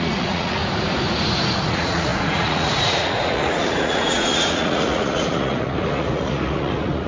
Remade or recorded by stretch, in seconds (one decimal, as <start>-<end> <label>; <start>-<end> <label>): 0.0-0.6 remade; 0.6-1.7 recorded; 1.7-7.1 remade